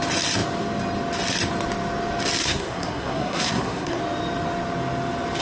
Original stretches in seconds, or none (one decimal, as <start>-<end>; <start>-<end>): 0.0-2.4; 4.0-5.4